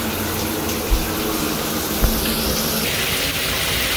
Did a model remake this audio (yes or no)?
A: no